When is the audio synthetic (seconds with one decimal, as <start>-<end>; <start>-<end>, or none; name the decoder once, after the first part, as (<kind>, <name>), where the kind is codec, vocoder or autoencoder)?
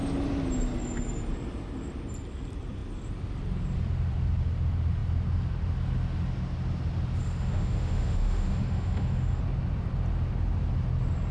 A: 7.2-9.4 (autoencoder, DAC-VAE)